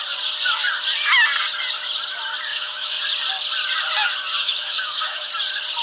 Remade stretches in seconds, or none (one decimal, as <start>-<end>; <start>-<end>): 2.5-3.0; 4.4-5.3